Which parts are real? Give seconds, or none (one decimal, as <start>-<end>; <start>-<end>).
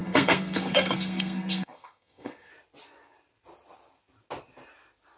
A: 2.5-5.2